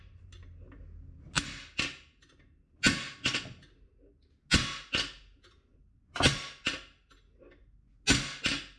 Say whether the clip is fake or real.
real